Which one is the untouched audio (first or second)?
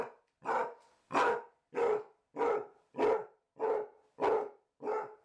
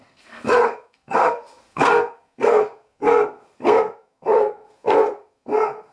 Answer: first